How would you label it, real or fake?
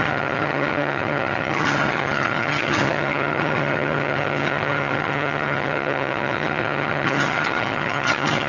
fake